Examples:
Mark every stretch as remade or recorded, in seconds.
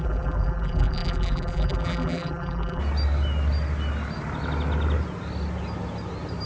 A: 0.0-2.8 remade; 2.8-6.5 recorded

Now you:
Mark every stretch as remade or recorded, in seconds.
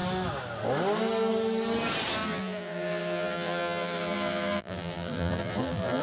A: 0.0-2.2 recorded; 2.2-6.0 remade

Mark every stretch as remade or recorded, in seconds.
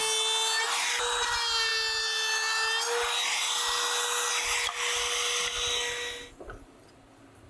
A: 0.0-7.5 recorded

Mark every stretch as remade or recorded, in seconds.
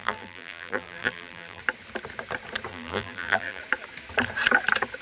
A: 0.0-1.6 remade; 1.6-2.7 recorded; 2.7-3.6 remade; 3.6-5.0 recorded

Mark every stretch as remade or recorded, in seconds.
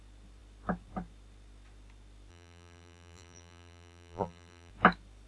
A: 0.0-2.3 recorded; 2.3-4.7 remade; 4.7-5.3 recorded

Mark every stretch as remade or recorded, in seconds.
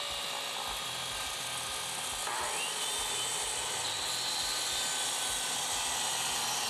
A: 0.0-6.7 recorded